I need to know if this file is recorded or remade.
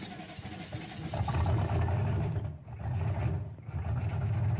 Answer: recorded